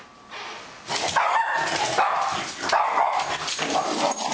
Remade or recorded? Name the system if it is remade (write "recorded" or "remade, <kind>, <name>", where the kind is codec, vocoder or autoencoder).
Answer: recorded